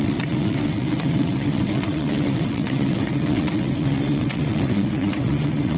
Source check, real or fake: fake